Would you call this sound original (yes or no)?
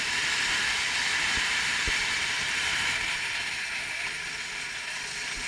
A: yes